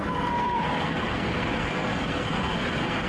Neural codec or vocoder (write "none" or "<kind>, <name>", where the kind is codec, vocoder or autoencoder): codec, SNAC